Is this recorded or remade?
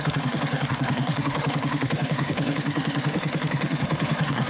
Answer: remade